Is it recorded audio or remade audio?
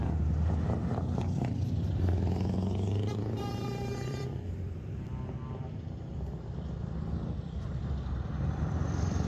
remade